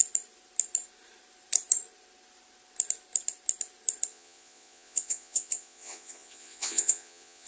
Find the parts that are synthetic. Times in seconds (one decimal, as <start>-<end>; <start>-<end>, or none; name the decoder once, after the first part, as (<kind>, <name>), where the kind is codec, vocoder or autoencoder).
4.1-7.5 (vocoder, Vocos)